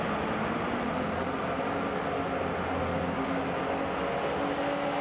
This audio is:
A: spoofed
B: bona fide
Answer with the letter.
B